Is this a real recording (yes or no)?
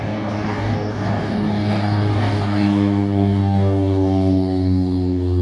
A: no